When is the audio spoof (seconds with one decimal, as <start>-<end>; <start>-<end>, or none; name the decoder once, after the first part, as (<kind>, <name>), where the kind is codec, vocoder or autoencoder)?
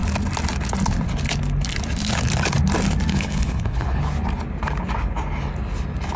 3.1-4.0 (codec, HILCodec)